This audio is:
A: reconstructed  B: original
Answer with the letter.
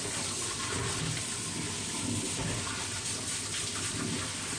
B